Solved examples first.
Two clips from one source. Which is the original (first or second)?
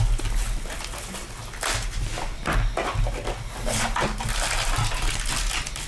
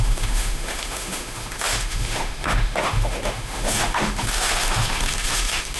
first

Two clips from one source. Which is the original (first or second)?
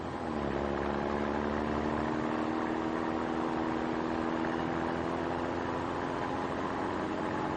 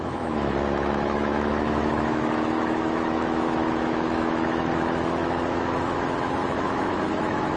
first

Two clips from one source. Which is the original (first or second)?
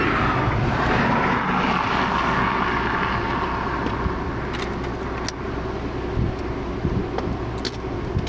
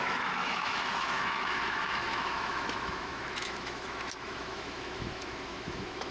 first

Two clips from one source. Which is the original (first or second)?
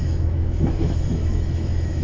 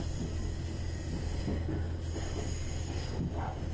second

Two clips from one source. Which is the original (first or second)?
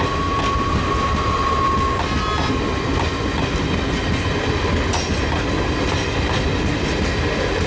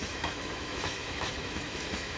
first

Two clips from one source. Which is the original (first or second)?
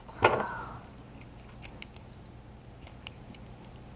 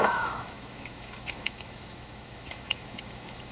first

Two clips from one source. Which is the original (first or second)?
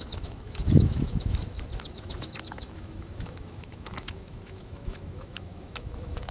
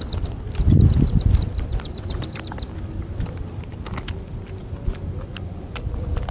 second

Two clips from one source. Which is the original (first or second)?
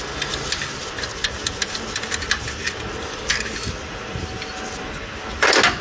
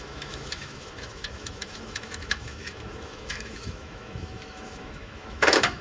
first